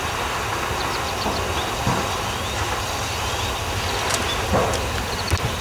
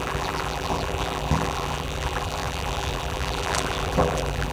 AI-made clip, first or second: second